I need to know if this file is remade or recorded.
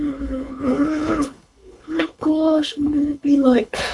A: remade